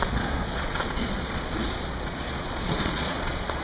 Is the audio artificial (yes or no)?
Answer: yes